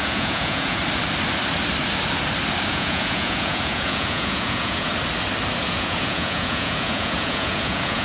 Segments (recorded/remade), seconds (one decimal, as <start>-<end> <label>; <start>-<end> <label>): 0.0-0.8 remade; 0.8-2.7 recorded; 2.7-4.9 remade; 4.9-5.6 recorded; 5.6-8.0 remade

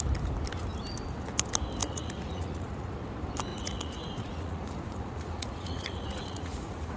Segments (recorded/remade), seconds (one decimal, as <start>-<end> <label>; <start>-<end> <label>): 0.0-1.8 recorded; 1.8-2.9 remade; 2.9-3.5 recorded; 3.5-7.0 remade

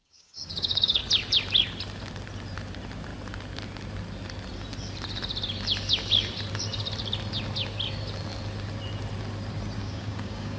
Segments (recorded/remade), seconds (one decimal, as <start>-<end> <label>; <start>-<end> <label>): 0.0-1.0 remade; 1.0-9.8 recorded; 9.8-10.6 remade

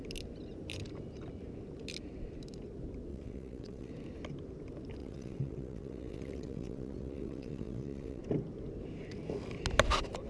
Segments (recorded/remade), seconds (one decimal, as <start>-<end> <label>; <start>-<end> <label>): 0.0-3.1 recorded; 3.1-3.9 remade; 3.9-5.0 recorded; 5.0-8.2 remade; 8.2-10.3 recorded

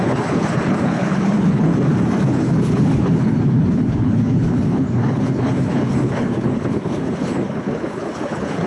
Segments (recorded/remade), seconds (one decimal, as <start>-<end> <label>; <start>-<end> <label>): 0.0-1.7 remade; 1.7-2.3 recorded; 2.3-8.7 remade

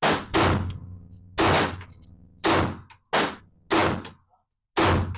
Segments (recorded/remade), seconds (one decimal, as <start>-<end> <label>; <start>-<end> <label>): 0.0-5.2 recorded

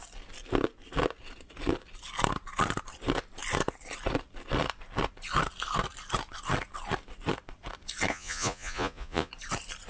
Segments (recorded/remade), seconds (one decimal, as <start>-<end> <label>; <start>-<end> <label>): 0.0-8.1 recorded; 8.1-9.3 remade; 9.3-9.9 recorded

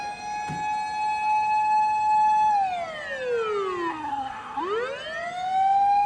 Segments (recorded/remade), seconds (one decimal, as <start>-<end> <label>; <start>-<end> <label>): 0.0-3.9 recorded; 3.9-4.6 remade; 4.6-6.1 recorded